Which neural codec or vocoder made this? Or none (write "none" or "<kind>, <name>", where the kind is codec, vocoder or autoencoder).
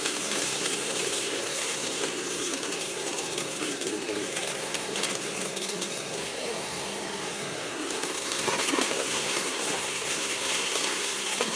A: codec, SNAC